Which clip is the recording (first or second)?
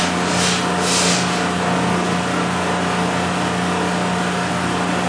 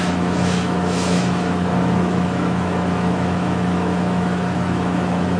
first